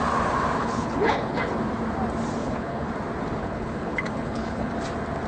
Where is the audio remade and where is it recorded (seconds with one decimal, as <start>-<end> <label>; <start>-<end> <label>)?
0.0-0.6 recorded; 0.6-1.4 remade; 1.4-2.4 recorded; 2.4-2.9 remade; 2.9-3.4 recorded; 3.4-4.7 remade; 4.7-5.3 recorded